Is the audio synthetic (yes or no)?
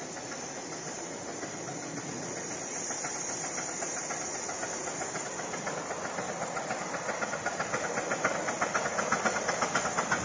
no